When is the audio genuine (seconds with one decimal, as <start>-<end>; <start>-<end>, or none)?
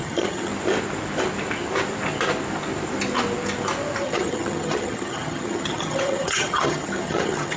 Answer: 0.5-4.0